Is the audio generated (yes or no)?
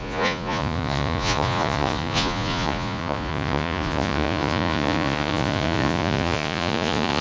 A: yes